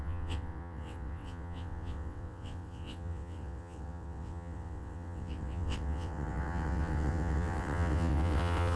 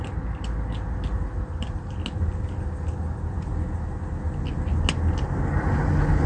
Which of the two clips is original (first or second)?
second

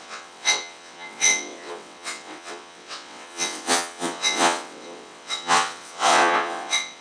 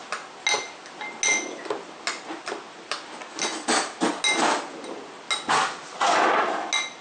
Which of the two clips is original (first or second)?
second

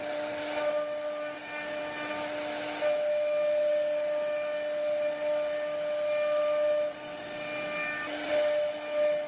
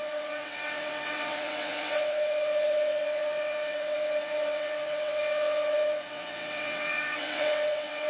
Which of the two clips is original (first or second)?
first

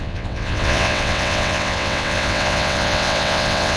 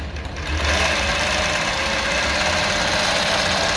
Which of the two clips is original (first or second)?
second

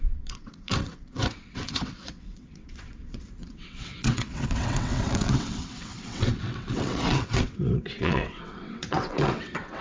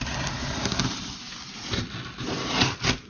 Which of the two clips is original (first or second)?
second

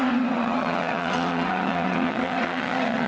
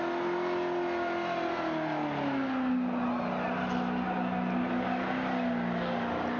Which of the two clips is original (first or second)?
second